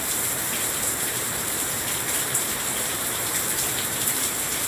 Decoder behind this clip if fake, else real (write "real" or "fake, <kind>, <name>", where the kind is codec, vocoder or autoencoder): fake, vocoder, BigVGAN v2